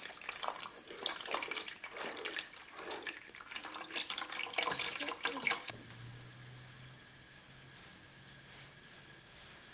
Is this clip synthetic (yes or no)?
no